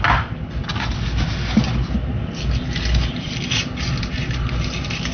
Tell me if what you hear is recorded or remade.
recorded